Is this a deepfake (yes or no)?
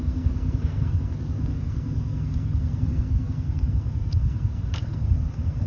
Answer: yes